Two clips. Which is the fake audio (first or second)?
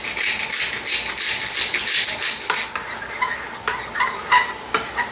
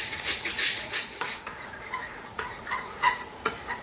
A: second